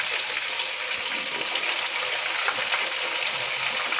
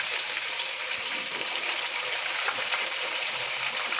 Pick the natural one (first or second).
first